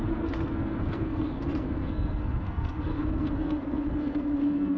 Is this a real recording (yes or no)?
no